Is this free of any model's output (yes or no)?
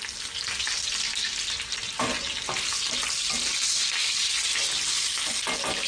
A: yes